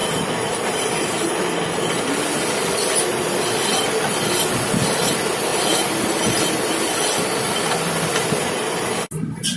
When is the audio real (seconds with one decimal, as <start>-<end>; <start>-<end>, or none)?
0.0-5.5; 6.4-9.6